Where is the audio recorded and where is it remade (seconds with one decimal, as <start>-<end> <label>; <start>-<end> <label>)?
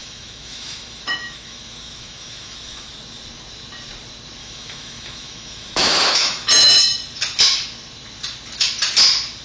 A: 0.0-2.9 remade; 2.9-4.4 recorded; 4.4-6.5 remade; 6.5-9.4 recorded